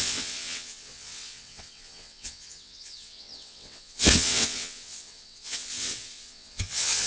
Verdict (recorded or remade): remade